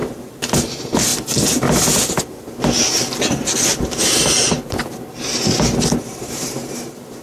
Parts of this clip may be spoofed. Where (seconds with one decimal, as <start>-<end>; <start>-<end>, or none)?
0.0-1.1; 3.8-4.8; 6.0-7.2